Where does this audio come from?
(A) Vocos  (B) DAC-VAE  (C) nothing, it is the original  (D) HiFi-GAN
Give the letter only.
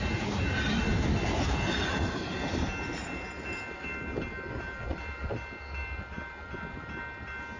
C